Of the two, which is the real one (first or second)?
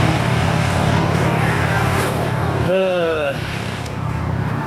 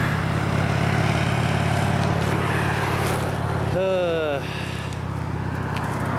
second